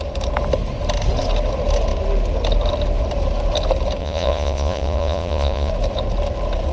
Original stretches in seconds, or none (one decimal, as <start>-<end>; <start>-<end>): 0.0-4.0; 5.7-6.7